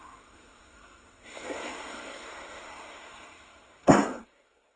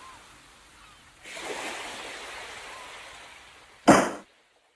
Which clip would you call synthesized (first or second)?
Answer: first